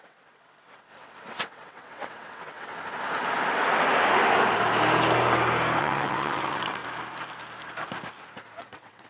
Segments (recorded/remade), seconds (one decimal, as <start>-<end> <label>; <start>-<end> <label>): 0.0-2.7 remade; 2.7-5.8 recorded; 5.8-6.8 remade; 6.8-8.6 recorded; 8.6-9.1 remade